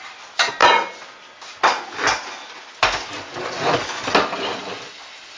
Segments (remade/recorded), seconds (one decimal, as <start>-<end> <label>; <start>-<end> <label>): 0.0-5.4 recorded